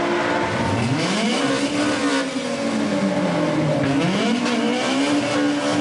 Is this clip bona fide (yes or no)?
yes